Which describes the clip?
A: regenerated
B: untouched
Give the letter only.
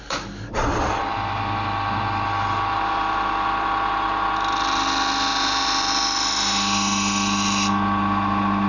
B